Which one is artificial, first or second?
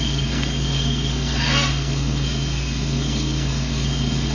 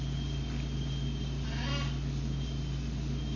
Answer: first